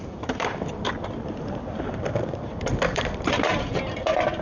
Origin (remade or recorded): remade